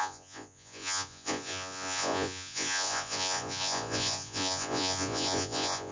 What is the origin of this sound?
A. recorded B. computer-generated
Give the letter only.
B